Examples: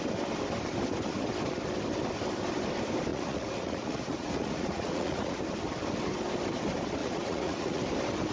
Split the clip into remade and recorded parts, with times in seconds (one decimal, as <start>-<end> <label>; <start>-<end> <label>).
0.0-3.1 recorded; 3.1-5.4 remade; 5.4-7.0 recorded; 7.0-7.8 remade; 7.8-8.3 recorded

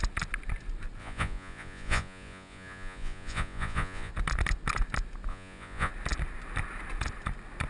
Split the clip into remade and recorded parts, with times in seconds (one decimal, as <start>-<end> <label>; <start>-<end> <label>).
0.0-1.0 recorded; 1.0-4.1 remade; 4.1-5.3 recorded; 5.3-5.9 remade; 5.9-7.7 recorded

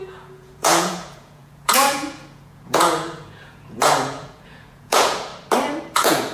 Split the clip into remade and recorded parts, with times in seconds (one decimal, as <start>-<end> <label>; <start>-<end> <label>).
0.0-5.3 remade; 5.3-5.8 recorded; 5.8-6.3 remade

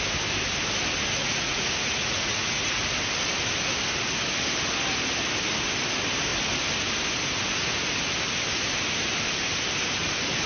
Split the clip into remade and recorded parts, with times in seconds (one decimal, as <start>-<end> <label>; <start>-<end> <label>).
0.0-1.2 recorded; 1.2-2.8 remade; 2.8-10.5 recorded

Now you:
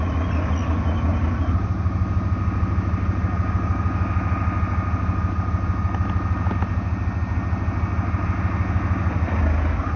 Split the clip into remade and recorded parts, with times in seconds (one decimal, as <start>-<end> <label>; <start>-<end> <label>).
0.0-10.0 recorded

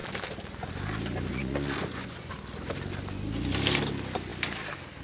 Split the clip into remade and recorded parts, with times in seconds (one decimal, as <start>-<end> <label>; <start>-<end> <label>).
0.0-1.3 recorded; 1.3-2.3 remade; 2.3-5.0 recorded

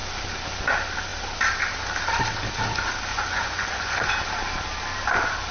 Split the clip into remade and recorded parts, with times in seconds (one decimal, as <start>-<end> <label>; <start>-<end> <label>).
0.0-3.1 recorded; 3.1-4.1 remade; 4.1-5.5 recorded

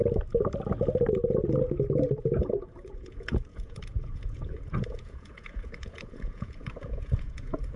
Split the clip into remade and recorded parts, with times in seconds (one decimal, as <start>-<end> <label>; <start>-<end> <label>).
0.0-2.2 recorded; 2.2-7.8 remade